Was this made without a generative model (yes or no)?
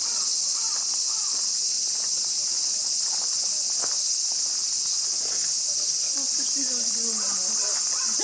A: yes